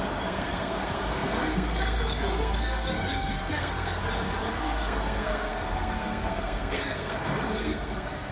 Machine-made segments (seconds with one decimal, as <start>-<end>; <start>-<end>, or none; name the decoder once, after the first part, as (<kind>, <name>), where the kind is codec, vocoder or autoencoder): 0.0-4.0 (codec, SNAC); 4.5-8.3